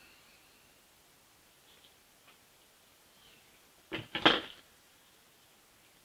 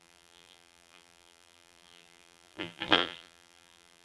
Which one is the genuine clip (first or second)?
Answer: first